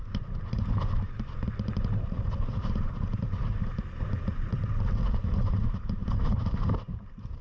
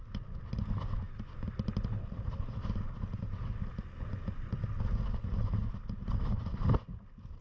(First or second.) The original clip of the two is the second